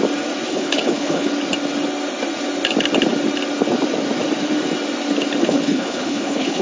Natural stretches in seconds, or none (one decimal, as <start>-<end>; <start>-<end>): 0.0-0.5; 1.3-5.4